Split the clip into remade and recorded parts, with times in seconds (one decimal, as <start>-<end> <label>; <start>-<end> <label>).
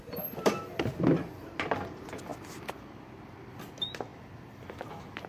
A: 0.0-5.3 recorded